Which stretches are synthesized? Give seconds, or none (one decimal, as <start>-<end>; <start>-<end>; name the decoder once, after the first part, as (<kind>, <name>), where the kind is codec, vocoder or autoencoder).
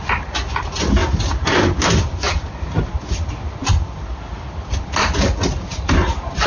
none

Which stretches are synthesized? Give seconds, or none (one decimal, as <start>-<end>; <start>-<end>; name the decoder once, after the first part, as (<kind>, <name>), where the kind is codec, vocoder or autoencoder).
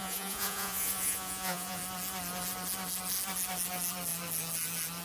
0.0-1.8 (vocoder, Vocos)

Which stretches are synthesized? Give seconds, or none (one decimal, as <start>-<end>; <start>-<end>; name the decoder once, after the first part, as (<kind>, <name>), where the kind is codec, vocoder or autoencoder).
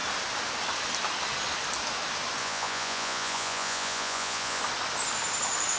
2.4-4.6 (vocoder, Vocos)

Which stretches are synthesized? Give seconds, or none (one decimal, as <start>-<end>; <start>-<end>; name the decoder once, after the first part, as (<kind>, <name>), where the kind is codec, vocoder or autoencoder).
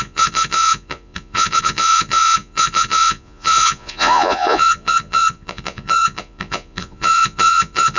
0.0-8.0 (vocoder, Vocos)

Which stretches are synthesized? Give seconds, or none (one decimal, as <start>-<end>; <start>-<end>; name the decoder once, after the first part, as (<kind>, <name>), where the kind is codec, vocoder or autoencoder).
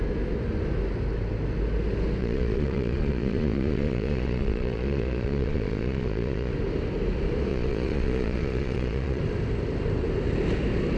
2.2-6.5 (vocoder, Vocos); 7.5-9.2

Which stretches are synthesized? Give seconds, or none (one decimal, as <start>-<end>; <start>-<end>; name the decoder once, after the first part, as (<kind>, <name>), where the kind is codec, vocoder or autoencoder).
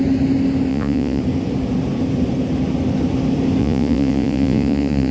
0.7-1.2 (vocoder, Vocos); 3.6-5.1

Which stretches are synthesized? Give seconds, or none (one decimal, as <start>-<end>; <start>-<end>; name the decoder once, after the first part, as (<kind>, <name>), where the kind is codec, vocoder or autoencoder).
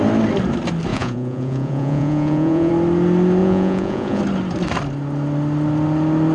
0.9-2.7 (vocoder, Vocos); 3.4-4.2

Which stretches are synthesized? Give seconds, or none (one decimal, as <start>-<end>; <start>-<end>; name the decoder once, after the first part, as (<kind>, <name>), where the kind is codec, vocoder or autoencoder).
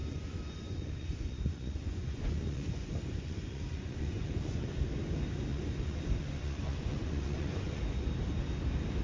0.0-4.8 (vocoder, Vocos); 5.5-7.8